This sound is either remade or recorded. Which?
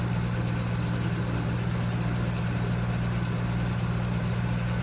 recorded